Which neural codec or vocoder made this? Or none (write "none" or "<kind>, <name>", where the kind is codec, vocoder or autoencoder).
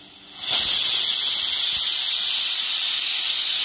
none